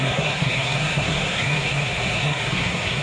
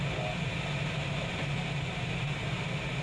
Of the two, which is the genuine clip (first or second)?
second